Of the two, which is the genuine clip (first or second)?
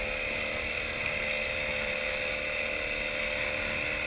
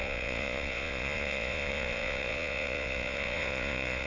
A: first